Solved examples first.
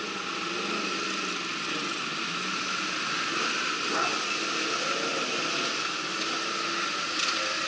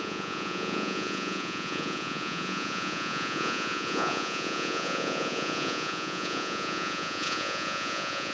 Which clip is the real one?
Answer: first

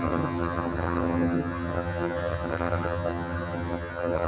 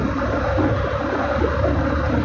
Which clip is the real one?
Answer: second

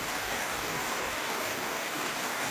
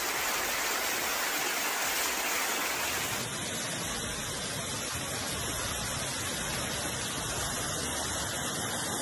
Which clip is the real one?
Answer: second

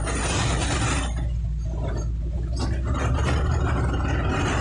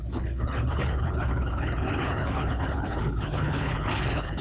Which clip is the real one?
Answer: first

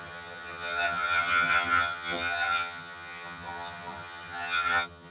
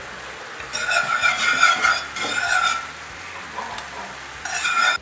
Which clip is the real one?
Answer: second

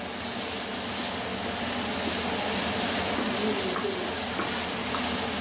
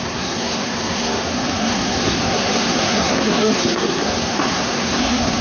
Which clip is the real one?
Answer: first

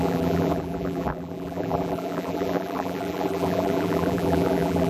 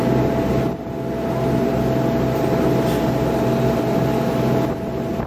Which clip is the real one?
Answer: second